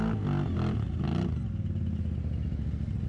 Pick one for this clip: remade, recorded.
recorded